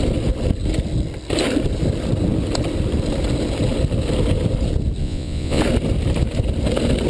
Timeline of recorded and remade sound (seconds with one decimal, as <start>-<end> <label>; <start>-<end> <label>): 0.0-5.0 recorded; 5.0-5.6 remade; 5.6-7.1 recorded

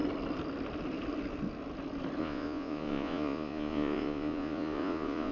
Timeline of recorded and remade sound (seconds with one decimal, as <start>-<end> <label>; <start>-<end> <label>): 0.0-2.2 recorded; 2.2-5.3 remade